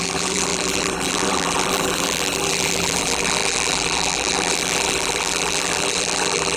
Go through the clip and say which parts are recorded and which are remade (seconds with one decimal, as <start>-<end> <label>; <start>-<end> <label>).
0.0-6.6 remade